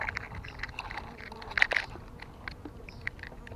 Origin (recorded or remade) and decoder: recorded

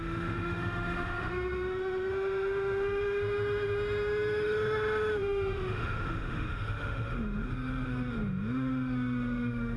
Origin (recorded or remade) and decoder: remade, autoencoder, DAC-VAE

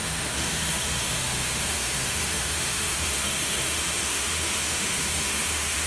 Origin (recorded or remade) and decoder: remade, autoencoder, DAC-VAE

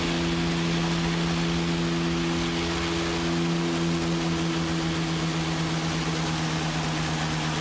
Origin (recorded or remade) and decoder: recorded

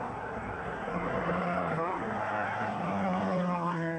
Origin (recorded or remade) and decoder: remade, codec, SNAC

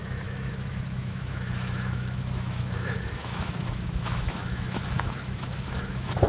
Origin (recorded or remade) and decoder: remade, autoencoder, DAC-VAE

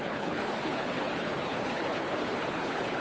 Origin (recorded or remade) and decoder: remade, codec, HILCodec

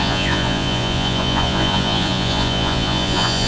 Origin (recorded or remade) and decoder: remade, vocoder, Vocos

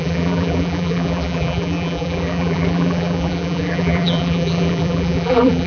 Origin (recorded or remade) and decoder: remade, vocoder, BigVGAN v2